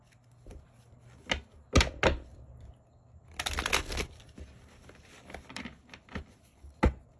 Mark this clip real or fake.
real